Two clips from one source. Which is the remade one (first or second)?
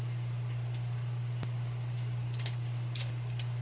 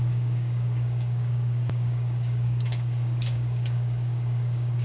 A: second